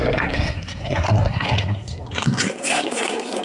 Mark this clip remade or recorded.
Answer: remade